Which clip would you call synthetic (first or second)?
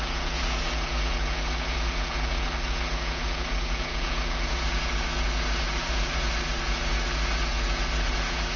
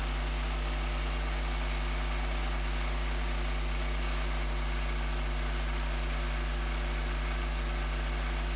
first